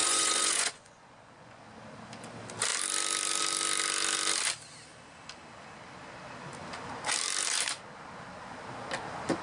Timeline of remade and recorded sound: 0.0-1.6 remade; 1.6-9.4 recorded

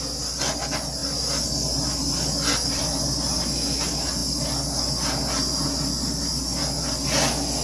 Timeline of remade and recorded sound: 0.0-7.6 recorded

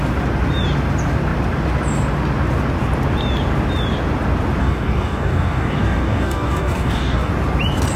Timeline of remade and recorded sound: 0.0-4.6 recorded; 4.6-7.3 remade; 7.3-8.0 recorded

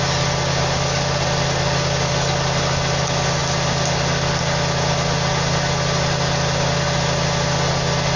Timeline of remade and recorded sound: 0.0-8.2 recorded